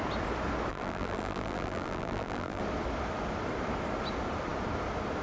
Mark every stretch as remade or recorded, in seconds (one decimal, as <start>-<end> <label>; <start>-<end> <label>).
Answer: 0.0-0.7 recorded; 0.7-2.6 remade; 2.6-5.2 recorded